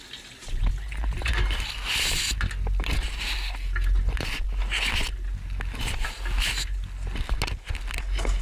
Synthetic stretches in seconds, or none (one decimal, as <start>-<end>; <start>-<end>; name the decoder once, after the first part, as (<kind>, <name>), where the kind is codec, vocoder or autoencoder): 0.4-1.3 (vocoder, BigVGAN v2)